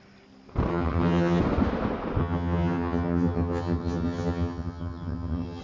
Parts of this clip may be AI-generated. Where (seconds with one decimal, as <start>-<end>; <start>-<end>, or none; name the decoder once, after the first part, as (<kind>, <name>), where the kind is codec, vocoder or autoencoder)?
0.7-1.4 (vocoder, HiFi-GAN); 2.2-5.6